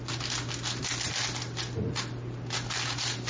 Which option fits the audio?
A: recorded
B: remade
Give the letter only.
B